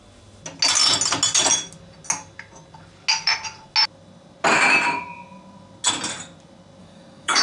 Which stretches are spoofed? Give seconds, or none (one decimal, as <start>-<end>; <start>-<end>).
6.8-7.4